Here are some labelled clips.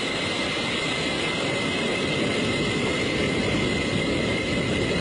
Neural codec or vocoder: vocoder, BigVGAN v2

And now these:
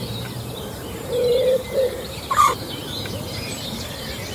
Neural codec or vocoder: vocoder, BigVGAN v2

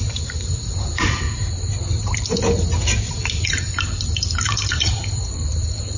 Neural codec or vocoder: vocoder, BigVGAN v2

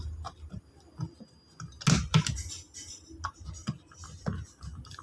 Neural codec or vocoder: none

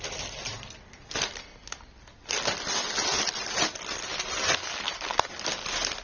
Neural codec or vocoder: none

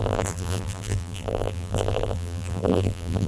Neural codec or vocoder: vocoder, BigVGAN v2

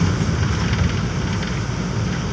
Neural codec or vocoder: none